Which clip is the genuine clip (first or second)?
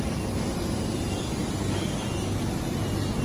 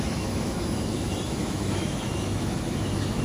first